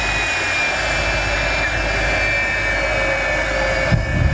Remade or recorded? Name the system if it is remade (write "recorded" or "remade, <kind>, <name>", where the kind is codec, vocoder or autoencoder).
recorded